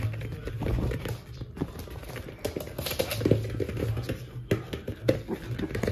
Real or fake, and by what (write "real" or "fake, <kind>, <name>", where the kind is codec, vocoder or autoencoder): real